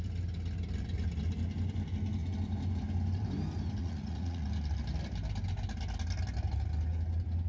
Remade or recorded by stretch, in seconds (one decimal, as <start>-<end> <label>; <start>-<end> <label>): 0.0-3.8 recorded; 3.8-4.5 remade; 4.5-7.5 recorded